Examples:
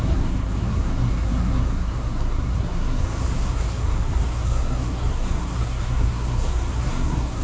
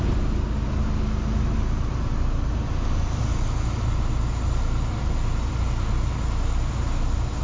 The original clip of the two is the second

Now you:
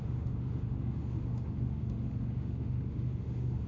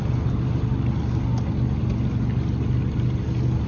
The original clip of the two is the second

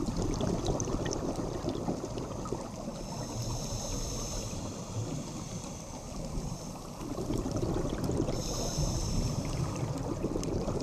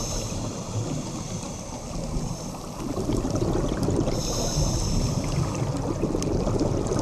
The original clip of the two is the second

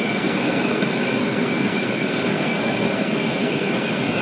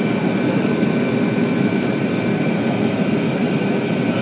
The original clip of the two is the second